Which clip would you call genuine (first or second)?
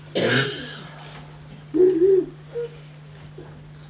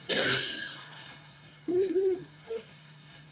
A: first